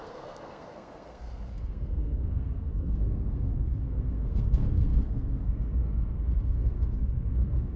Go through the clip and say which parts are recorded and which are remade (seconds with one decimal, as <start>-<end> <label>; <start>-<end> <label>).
0.0-7.8 remade